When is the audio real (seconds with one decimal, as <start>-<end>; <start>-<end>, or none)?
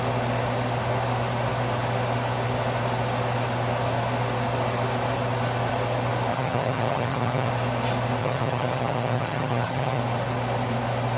0.0-6.3; 7.5-8.2; 10.0-11.2